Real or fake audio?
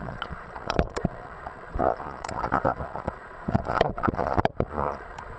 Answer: fake